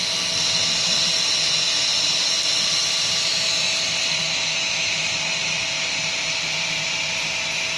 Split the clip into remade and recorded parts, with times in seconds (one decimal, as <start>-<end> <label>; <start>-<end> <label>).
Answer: 0.0-4.2 recorded; 4.2-5.0 remade; 5.0-7.8 recorded